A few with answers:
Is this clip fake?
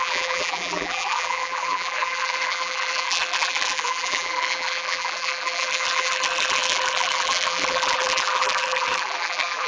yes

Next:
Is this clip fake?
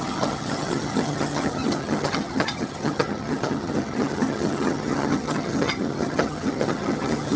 yes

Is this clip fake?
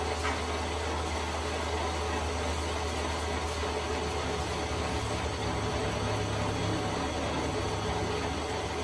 no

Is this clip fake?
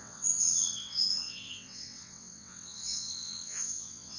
yes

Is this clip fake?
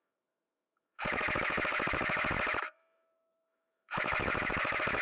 yes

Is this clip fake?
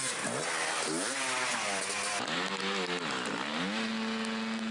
no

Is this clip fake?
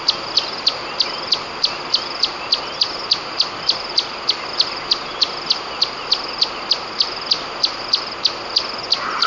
no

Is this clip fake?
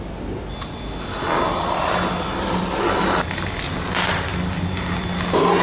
no